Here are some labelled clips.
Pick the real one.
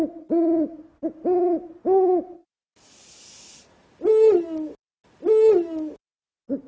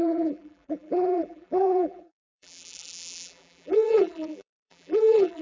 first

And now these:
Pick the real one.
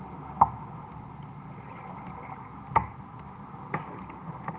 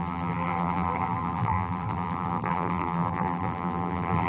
first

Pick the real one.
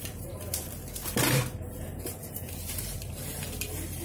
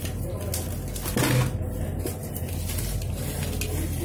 second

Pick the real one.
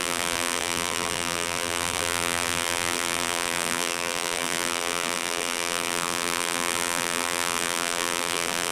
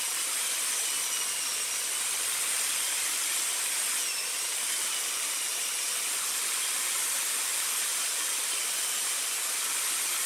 second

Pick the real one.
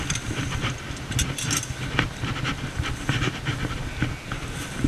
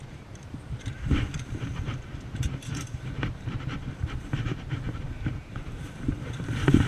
first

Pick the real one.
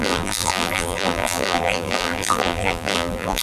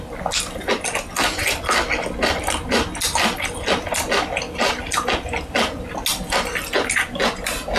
second